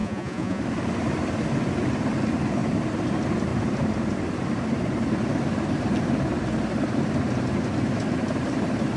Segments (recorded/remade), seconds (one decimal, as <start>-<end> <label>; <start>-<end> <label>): 0.0-0.6 remade; 0.6-9.0 recorded